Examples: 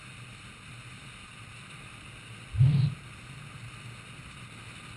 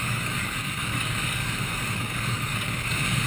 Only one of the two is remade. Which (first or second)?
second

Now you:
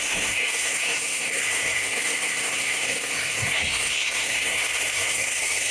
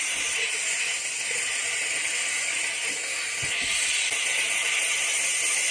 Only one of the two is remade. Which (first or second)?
first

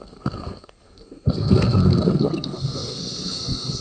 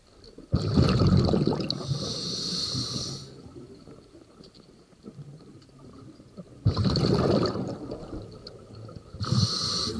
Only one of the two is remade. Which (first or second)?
first